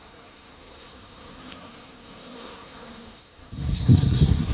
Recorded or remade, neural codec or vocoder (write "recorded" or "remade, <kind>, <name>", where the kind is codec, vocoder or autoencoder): remade, codec, SNAC